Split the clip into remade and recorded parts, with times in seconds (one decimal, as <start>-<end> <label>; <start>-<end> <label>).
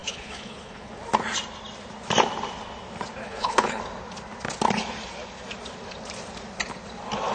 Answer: 0.0-0.9 remade; 0.9-3.2 recorded; 3.2-3.8 remade; 3.8-7.3 recorded